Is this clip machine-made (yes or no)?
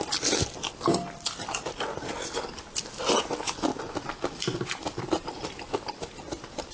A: no